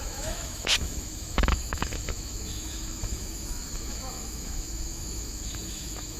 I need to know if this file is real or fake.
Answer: fake